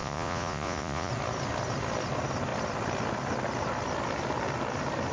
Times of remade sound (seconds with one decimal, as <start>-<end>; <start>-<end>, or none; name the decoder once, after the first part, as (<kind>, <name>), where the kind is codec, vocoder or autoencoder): 0.0-1.1 (vocoder, Vocos)